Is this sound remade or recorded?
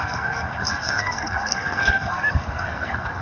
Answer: remade